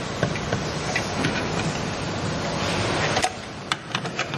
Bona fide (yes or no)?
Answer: no